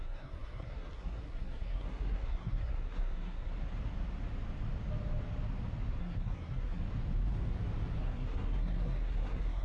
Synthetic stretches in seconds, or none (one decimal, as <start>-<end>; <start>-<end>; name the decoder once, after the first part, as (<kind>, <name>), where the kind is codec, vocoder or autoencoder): 0.0-3.5 (codec, SNAC); 6.0-6.8; 8.0-9.6